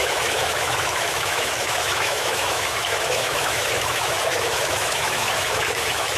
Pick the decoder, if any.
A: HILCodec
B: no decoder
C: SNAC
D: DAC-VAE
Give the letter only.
D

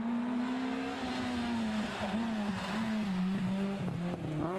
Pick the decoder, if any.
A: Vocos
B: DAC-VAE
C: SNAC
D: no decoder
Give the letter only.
D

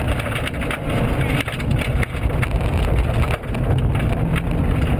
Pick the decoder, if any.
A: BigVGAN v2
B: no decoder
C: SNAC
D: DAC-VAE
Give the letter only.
B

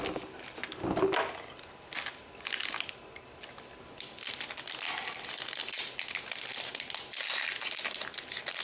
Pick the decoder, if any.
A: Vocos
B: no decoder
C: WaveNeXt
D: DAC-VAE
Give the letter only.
B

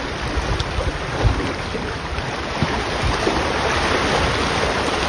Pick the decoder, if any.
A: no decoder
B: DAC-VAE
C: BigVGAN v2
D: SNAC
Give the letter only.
A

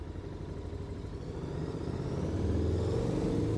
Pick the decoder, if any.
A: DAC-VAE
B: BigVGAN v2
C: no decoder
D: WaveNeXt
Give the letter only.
C